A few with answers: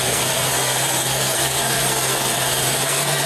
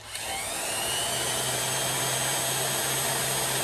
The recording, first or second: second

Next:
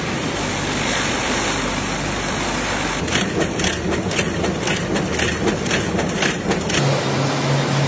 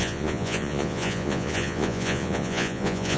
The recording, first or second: first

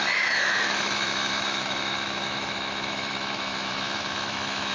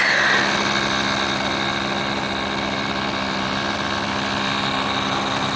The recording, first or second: second